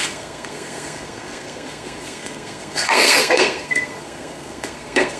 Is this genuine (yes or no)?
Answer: no